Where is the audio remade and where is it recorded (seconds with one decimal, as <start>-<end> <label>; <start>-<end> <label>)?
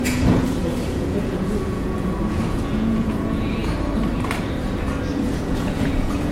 0.0-3.6 remade; 3.6-5.3 recorded; 5.3-6.3 remade